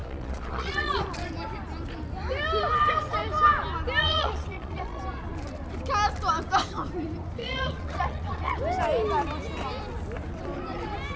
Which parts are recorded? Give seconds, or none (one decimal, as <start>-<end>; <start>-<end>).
1.0-4.0; 5.0-7.4; 8.6-11.2